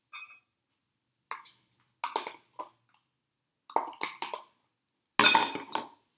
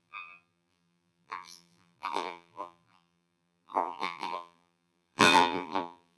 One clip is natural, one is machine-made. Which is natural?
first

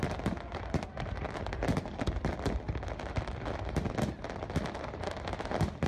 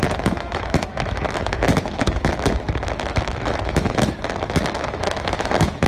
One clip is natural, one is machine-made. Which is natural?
first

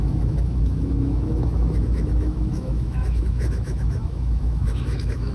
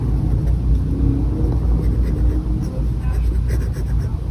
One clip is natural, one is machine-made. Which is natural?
second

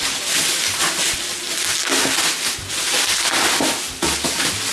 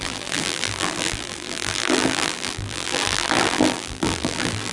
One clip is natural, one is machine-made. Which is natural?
first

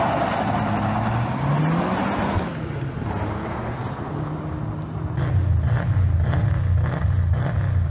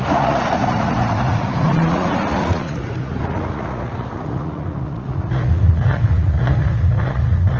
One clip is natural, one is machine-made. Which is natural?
first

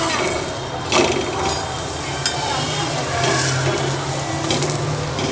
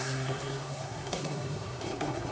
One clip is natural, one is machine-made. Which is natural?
first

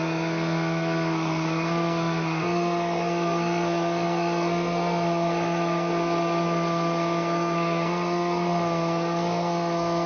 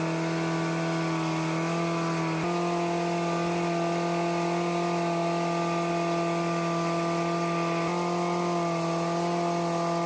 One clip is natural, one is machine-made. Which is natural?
second